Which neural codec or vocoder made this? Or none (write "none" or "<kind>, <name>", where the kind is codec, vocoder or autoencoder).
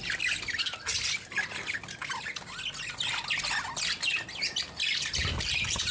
none